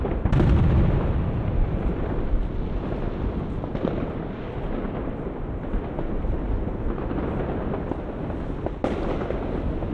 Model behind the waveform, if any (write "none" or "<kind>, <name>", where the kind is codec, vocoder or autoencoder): none